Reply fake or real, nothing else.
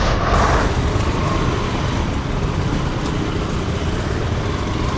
real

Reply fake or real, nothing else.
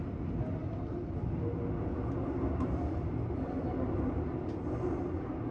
real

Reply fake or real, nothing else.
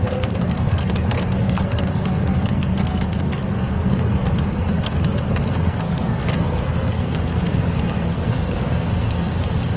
fake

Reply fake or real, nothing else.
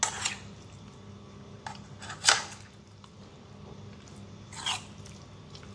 real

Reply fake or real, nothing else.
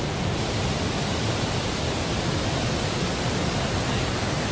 real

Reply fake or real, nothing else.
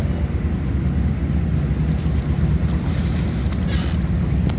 real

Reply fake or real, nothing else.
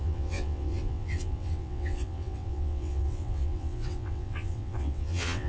fake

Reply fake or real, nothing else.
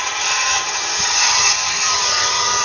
fake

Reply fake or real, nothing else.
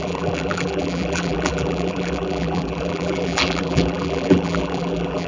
fake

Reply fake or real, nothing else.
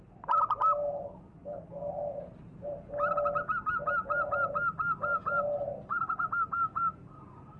real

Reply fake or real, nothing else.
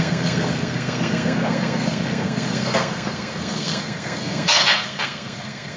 fake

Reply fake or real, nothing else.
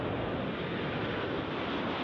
real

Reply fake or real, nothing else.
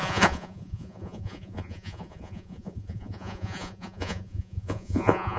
fake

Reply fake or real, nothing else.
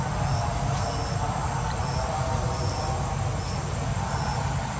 real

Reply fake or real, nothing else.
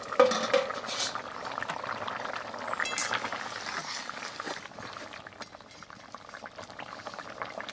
real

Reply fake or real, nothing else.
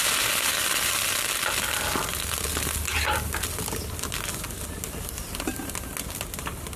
real